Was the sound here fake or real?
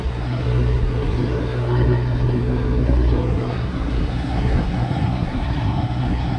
fake